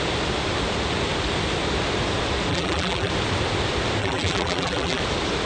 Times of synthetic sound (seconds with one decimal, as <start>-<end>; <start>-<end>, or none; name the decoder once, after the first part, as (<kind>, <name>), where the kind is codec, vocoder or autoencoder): 2.5-3.1 (vocoder, BigVGAN v2); 4.0-5.0